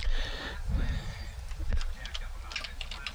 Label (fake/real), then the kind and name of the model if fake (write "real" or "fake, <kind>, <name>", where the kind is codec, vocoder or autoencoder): real